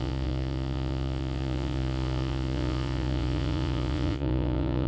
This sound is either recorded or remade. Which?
remade